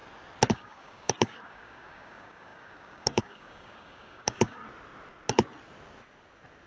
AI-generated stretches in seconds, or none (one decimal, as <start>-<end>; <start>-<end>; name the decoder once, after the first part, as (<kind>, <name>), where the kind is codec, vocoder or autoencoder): 0.5-4.6 (codec, DAC)